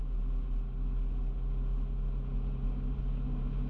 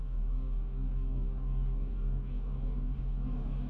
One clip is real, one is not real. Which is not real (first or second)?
second